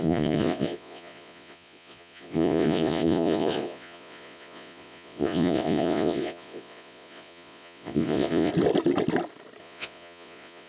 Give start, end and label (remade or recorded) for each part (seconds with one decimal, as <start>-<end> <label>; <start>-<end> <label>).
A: 0.0-8.5 remade; 8.5-9.6 recorded; 9.6-10.7 remade